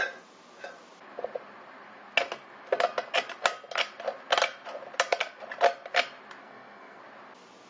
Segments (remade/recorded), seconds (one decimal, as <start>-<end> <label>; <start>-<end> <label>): 0.0-6.4 recorded; 6.4-7.0 remade; 7.0-7.7 recorded